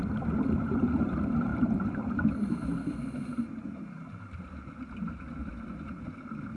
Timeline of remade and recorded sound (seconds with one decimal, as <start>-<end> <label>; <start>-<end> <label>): 0.0-6.6 recorded